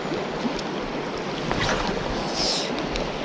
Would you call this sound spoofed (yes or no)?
no